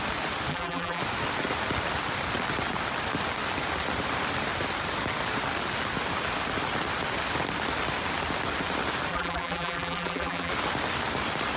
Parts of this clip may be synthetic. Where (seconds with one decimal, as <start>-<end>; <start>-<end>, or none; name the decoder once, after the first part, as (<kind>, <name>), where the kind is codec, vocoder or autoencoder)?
0.5-1.0 (vocoder, BigVGAN v2); 9.1-10.5